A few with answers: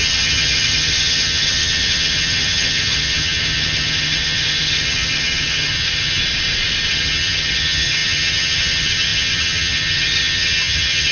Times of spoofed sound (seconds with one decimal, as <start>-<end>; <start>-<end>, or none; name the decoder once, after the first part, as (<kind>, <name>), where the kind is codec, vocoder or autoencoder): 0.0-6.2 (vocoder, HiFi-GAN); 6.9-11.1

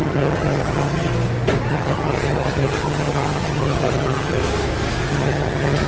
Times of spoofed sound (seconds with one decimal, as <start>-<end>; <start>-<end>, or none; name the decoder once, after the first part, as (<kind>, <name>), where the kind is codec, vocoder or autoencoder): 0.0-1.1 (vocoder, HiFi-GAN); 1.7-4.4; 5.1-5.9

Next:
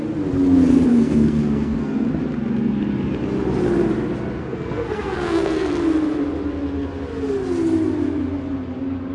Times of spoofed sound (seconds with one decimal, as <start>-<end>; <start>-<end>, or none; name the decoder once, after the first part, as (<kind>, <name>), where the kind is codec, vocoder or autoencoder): 0.9-2.1 (codec, SNAC); 4.4-5.7